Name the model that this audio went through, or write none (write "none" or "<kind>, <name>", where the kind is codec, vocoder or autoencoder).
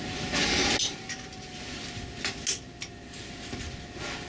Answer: none